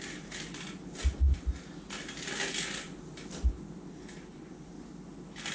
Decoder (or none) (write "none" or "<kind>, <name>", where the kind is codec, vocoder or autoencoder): none